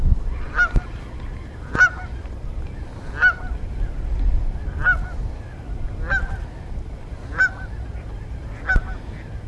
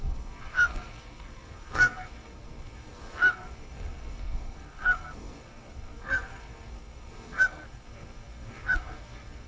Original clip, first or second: first